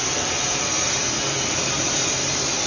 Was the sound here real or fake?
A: fake